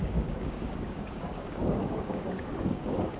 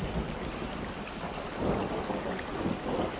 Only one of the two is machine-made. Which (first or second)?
first